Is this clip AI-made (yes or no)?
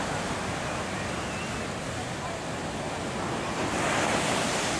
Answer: no